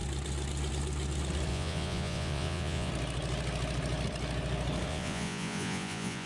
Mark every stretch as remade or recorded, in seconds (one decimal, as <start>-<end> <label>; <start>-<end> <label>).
0.0-1.5 recorded; 1.5-2.9 remade; 2.9-4.9 recorded; 4.9-6.3 remade